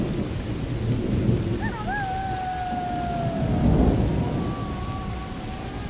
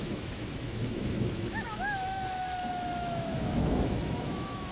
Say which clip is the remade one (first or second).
second